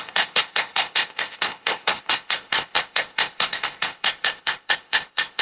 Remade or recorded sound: remade